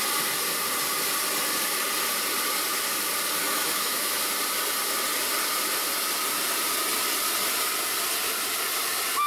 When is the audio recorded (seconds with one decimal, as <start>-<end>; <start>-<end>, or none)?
0.0-3.4; 4.3-9.3

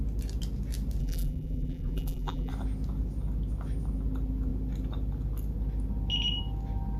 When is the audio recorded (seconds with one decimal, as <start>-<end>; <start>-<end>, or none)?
0.0-1.0; 2.5-7.0